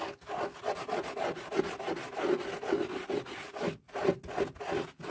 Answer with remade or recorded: recorded